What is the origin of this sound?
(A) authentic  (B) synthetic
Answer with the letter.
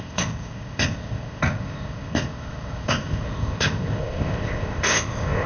B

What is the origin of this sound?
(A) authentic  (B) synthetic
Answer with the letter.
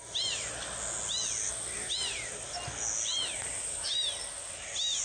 A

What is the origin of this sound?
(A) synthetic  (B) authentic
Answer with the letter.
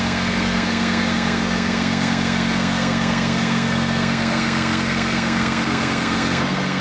A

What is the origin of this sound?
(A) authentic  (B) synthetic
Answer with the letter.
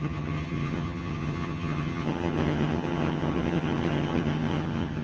B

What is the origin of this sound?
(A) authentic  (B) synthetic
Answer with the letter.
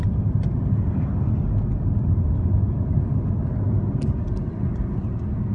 A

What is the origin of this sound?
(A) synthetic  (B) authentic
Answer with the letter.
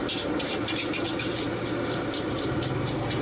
B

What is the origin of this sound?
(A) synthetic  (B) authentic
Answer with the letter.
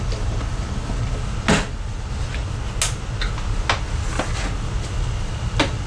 B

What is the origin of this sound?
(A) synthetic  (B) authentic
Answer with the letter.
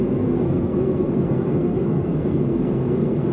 A